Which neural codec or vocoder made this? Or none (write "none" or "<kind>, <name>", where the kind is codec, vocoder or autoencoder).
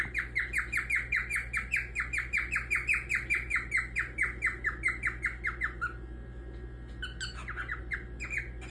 none